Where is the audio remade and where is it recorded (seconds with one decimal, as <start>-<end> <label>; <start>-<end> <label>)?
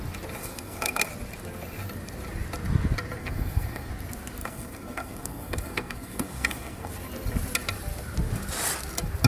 0.0-0.4 recorded; 0.4-1.1 remade; 1.1-3.2 recorded; 3.2-3.9 remade; 3.9-4.4 recorded; 4.4-6.9 remade; 6.9-9.3 recorded